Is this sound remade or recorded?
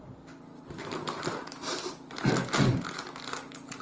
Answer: recorded